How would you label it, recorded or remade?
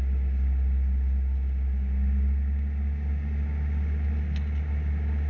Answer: recorded